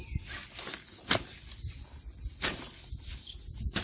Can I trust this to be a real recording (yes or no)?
yes